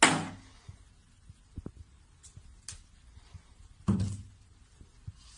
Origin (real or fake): real